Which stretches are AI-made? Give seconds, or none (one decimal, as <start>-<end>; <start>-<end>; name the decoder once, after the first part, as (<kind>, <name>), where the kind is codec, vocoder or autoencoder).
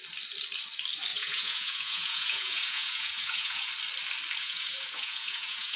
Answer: 1.1-3.7 (vocoder, Vocos); 4.4-5.8